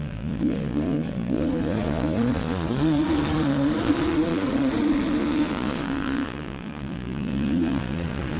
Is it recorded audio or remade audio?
remade